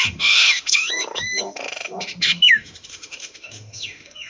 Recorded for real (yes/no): no